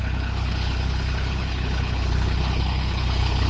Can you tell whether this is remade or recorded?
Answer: remade